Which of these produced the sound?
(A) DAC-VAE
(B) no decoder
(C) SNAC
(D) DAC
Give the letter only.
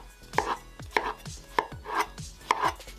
B